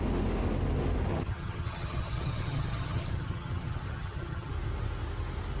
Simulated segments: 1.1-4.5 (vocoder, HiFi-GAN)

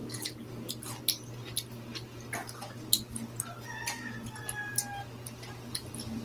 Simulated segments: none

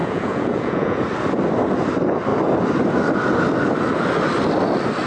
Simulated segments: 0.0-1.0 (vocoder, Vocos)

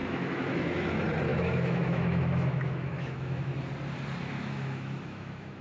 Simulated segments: 0.0-0.9 (autoencoder, DAC-VAE); 1.3-3.6; 4.2-5.6